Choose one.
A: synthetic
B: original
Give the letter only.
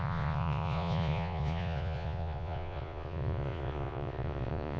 A